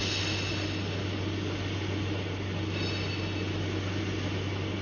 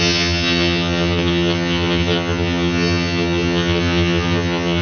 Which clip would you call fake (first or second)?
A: second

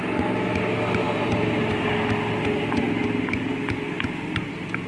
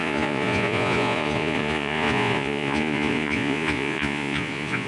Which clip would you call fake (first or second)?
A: second